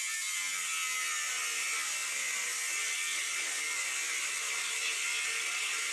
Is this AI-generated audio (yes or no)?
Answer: no